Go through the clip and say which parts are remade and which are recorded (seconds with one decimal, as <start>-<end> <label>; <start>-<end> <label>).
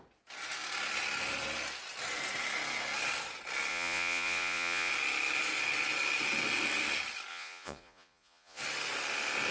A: 0.0-3.7 recorded; 3.7-4.9 remade; 4.9-7.3 recorded; 7.3-8.6 remade; 8.6-9.5 recorded